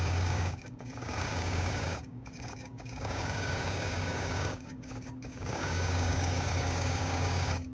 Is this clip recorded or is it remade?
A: remade